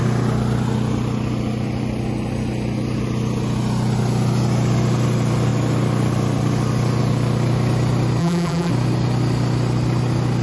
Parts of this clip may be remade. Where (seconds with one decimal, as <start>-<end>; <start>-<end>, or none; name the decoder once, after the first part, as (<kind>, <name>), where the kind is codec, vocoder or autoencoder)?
8.2-8.7 (vocoder, BigVGAN v2)